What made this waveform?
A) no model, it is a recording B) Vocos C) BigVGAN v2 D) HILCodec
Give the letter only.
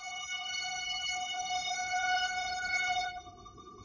D